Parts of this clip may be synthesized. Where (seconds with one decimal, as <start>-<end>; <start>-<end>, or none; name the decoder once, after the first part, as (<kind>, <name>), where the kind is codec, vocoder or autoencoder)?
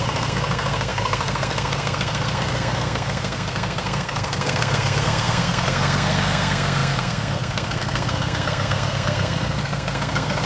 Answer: 0.0-10.5 (codec, SNAC)